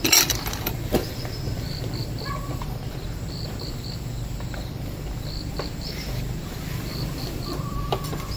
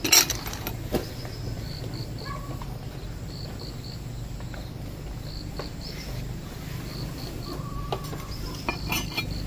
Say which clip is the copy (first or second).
first